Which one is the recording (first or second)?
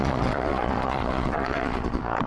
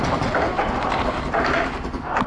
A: second